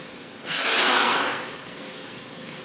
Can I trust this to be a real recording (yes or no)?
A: no